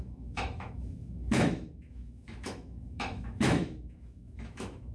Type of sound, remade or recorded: remade